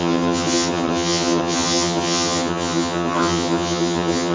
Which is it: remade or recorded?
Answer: remade